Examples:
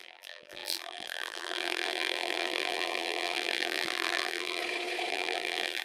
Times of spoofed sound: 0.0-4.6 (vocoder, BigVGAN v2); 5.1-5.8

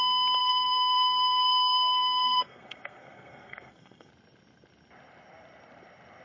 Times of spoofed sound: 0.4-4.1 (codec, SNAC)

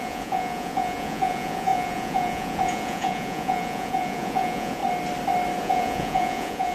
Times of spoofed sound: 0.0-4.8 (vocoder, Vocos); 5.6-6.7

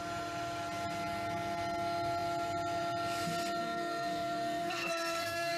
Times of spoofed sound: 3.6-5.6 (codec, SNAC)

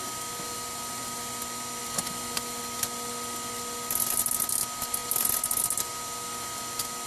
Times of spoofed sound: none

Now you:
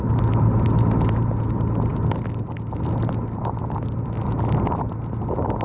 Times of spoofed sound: none

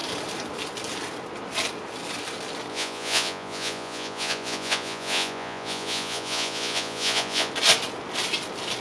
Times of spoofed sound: 2.7-7.5 (vocoder, Vocos)